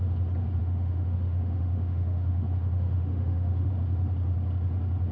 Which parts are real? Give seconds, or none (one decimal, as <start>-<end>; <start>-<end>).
0.0-0.6; 3.7-5.1

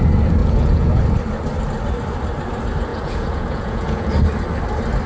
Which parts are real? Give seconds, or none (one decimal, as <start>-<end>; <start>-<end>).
0.0-0.4; 1.0-2.9; 4.1-5.1

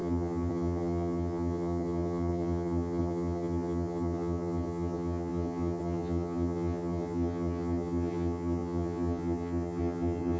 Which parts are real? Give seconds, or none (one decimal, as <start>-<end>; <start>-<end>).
none